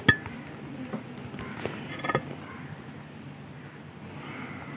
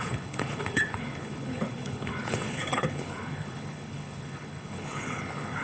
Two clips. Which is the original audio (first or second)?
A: first